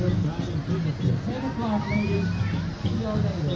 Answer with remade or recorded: recorded